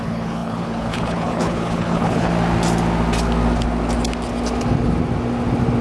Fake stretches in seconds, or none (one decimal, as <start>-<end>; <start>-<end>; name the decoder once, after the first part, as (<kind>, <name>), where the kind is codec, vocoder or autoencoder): 0.0-2.3 (codec, HILCodec)

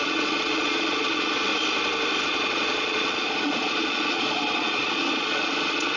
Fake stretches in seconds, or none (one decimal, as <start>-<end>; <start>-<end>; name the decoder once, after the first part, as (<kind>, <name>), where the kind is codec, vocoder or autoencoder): 0.0-1.5 (vocoder, Vocos); 2.2-6.0

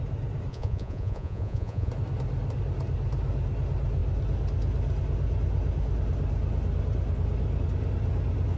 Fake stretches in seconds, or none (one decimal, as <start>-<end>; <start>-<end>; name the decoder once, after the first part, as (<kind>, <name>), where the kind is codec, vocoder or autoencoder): 0.5-1.9 (vocoder, Vocos)